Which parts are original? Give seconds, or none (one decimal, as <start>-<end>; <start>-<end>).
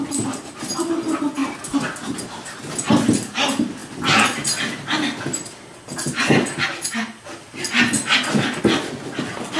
0.0-9.6